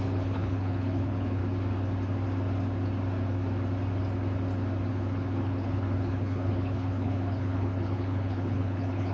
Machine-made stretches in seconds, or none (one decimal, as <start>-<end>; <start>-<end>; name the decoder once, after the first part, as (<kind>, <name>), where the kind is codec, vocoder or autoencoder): 0.0-1.4 (codec, HILCodec); 4.9-9.1